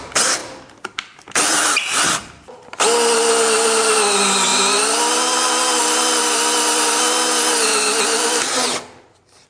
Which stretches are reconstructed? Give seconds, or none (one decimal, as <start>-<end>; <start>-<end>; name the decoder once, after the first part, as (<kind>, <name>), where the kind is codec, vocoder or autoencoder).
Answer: none